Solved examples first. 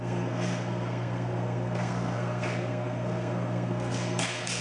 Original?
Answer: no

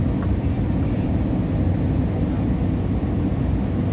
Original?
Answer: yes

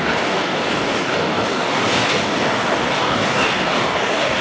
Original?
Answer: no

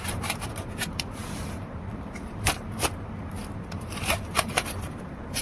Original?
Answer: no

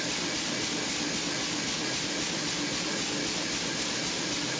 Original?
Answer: yes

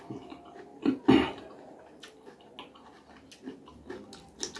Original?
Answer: yes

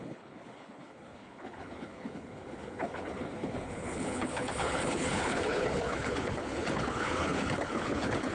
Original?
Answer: no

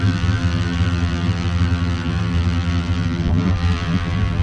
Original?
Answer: no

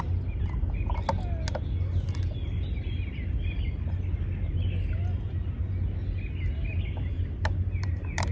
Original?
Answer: yes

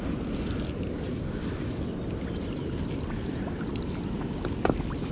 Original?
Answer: yes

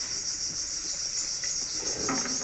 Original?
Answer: yes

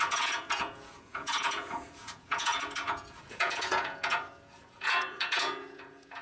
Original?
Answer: no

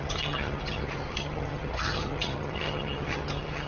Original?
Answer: no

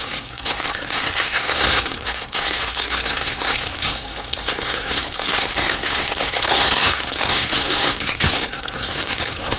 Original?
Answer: no